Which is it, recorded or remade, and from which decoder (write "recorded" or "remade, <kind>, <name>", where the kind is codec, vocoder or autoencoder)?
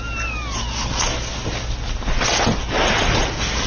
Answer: recorded